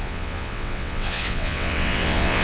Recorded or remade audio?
remade